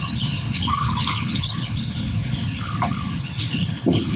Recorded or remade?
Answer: remade